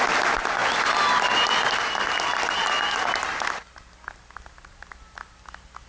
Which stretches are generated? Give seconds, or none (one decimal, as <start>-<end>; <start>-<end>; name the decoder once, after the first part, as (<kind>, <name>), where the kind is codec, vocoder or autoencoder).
none